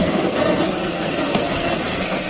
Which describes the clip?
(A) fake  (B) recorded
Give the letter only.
A